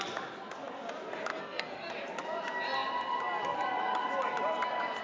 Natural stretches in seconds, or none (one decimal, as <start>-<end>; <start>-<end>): 0.0-1.3; 1.9-5.0